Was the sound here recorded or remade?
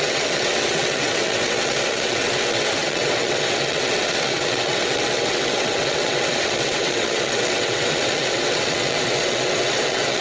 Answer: remade